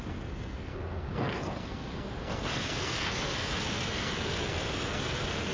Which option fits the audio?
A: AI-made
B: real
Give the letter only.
A